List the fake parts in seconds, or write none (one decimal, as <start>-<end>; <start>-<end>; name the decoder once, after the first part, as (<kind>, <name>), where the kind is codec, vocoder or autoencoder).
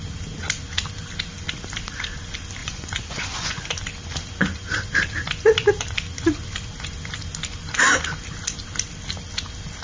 2.6-3.6 (vocoder, Vocos)